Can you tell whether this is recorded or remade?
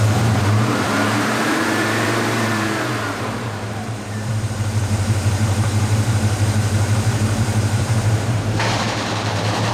remade